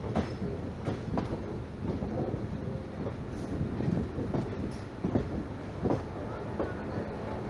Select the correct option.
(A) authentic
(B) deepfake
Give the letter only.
A